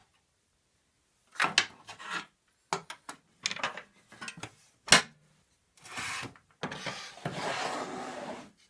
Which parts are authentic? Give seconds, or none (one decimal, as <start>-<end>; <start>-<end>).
0.0-8.7